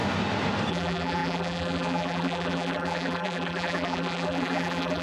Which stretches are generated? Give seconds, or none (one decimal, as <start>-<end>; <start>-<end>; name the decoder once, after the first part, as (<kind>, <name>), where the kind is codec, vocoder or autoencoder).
0.7-5.0 (vocoder, BigVGAN v2)